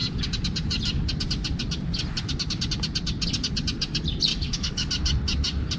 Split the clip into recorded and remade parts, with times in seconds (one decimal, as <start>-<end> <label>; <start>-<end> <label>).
0.0-4.3 recorded; 4.3-4.9 remade; 4.9-5.8 recorded